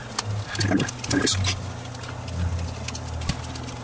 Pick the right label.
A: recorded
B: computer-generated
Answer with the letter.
A